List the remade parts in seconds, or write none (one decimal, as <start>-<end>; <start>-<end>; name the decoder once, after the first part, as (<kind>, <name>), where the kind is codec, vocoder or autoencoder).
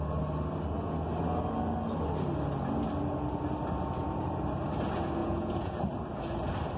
5.2-5.8 (vocoder, Vocos)